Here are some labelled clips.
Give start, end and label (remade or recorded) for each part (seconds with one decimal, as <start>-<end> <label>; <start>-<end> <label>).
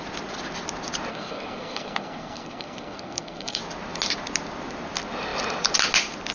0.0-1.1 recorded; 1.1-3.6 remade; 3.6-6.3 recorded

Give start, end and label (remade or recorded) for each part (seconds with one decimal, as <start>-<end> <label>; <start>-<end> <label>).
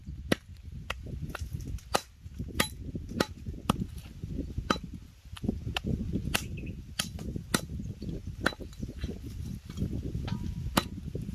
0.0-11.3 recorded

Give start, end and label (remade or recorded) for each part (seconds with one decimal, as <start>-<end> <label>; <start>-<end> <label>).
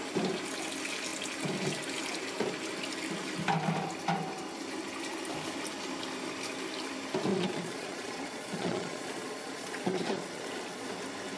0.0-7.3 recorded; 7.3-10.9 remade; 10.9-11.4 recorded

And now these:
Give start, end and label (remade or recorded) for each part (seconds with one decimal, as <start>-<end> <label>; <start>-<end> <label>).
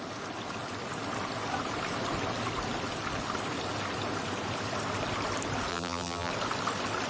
0.0-5.7 recorded; 5.7-6.3 remade; 6.3-7.1 recorded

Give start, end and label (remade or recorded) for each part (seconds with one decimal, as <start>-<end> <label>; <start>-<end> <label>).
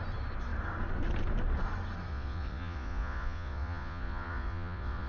0.0-2.1 recorded; 2.1-5.1 remade